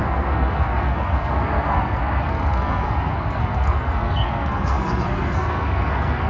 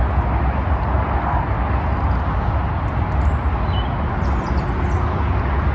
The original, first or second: second